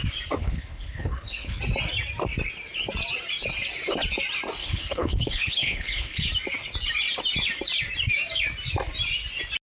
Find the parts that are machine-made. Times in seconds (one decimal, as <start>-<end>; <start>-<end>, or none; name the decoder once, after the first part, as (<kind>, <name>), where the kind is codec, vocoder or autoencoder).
0.4-1.6 (codec, HILCodec); 4.6-6.3